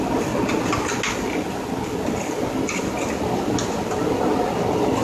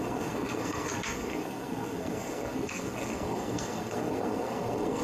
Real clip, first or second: first